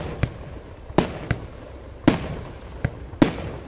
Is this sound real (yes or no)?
yes